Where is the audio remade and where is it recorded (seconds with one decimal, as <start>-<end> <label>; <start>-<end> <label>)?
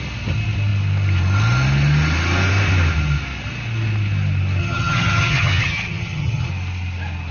0.0-4.6 recorded; 4.6-6.5 remade; 6.5-7.3 recorded